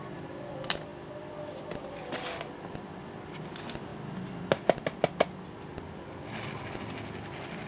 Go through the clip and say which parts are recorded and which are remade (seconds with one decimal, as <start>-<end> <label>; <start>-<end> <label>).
0.0-7.7 recorded